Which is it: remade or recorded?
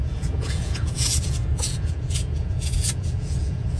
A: remade